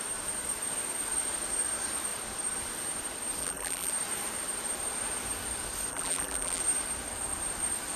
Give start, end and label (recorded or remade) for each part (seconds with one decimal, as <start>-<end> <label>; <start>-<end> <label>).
0.0-3.4 recorded; 3.4-3.9 remade; 3.9-5.9 recorded; 5.9-6.6 remade; 6.6-8.0 recorded